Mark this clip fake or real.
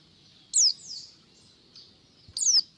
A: real